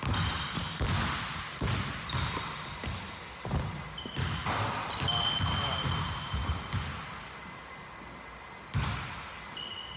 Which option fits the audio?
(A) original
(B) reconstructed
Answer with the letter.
A